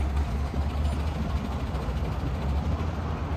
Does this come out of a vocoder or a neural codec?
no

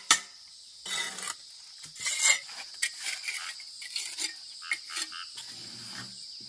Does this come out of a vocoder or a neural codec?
no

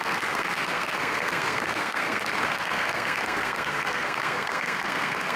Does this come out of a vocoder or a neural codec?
yes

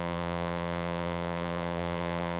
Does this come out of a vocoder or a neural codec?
yes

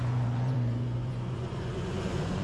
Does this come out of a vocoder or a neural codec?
yes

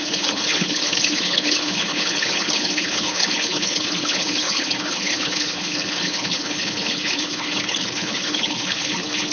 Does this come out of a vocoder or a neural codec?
yes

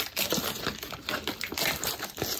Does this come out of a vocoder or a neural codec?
no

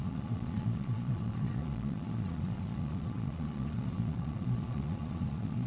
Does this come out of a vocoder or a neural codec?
yes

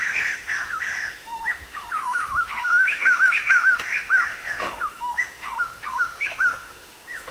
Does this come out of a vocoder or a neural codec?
yes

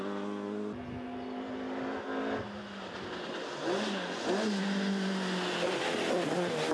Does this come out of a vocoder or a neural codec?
no